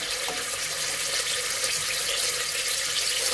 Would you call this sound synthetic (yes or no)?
no